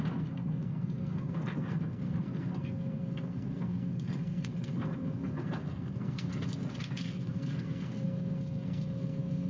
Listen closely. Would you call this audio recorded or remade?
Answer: remade